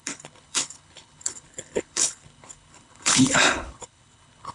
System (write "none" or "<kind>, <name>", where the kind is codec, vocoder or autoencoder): codec, HILCodec